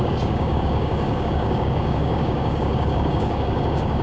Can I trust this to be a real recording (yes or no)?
no